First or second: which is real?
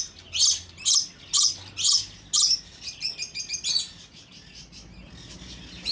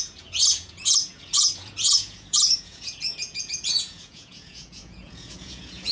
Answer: first